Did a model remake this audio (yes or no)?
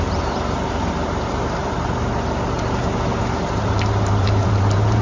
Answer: yes